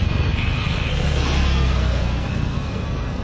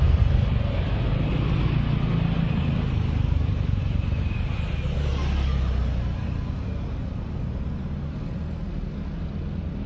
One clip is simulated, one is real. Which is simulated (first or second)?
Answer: first